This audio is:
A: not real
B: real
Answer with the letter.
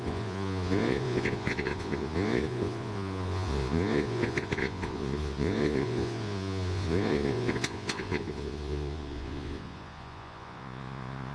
A